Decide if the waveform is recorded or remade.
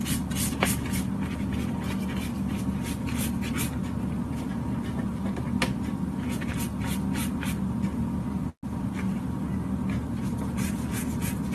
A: recorded